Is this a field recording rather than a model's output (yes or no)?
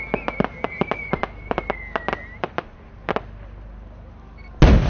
yes